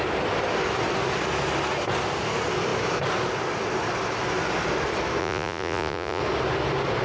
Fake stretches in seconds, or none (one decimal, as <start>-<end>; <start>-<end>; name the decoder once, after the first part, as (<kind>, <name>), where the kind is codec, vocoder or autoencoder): 5.2-6.2 (vocoder, Vocos)